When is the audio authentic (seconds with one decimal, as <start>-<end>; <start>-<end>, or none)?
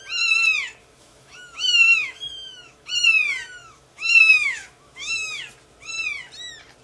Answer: 0.0-0.8; 2.9-3.6; 5.4-6.8